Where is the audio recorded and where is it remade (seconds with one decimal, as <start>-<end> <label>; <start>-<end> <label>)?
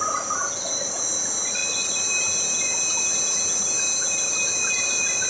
0.0-5.3 recorded